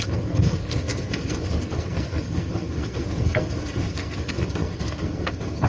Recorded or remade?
remade